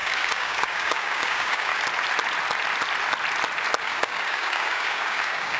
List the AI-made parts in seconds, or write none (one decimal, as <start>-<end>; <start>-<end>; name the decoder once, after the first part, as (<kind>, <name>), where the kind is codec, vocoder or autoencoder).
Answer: 0.0-1.7 (codec, DAC); 3.8-5.6

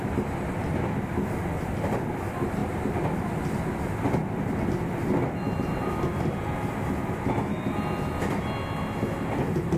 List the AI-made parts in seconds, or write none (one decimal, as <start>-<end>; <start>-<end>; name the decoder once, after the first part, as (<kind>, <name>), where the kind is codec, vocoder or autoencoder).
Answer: none

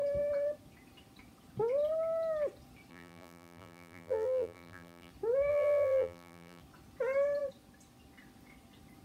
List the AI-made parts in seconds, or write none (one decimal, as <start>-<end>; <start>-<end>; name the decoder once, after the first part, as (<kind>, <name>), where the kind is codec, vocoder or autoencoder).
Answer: 2.9-5.1 (vocoder, BigVGAN v2); 5.5-6.6

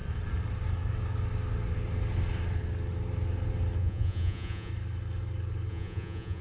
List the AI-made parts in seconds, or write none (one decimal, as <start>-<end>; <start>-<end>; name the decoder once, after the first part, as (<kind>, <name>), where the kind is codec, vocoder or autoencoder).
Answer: 3.8-4.7 (vocoder, Vocos); 5.7-6.4

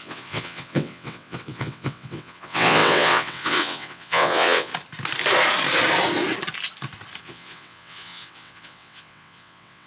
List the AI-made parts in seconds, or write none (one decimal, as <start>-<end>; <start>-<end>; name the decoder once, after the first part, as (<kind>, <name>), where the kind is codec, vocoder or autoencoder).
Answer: 0.0-4.7 (vocoder, WaveNeXt); 7.2-9.9

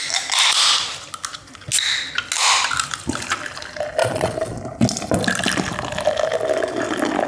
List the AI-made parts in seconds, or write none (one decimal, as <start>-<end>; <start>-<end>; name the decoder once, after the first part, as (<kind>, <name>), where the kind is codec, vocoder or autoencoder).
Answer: 4.0-4.6 (vocoder, Vocos)